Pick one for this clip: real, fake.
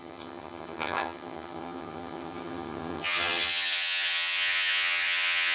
fake